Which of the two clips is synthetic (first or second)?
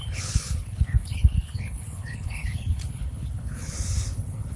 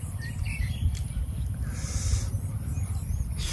first